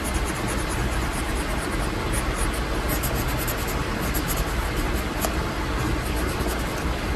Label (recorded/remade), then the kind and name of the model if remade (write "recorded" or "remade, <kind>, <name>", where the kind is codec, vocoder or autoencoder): recorded